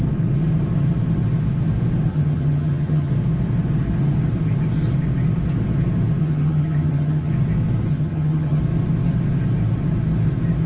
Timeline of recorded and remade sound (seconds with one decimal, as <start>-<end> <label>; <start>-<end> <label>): 0.0-2.1 recorded; 2.1-3.1 remade; 3.1-6.2 recorded; 6.2-7.3 remade; 7.3-7.9 recorded; 7.9-8.6 remade; 8.6-10.7 recorded